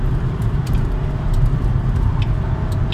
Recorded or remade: remade